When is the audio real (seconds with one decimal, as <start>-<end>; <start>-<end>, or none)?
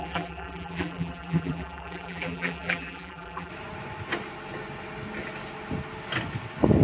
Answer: 3.5-6.8